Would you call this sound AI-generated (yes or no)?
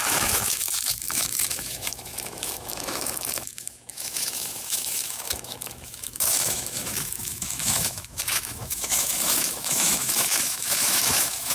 yes